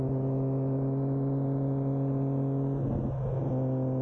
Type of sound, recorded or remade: recorded